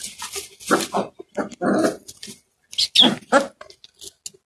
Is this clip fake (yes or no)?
no